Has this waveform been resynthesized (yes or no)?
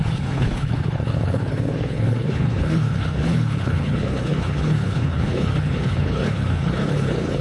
yes